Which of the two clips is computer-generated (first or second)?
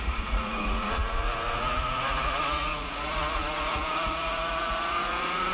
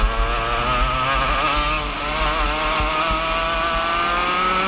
first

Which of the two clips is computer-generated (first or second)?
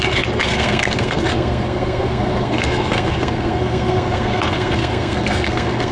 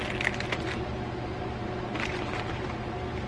first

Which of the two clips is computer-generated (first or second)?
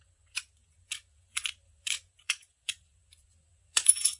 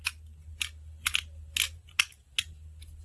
first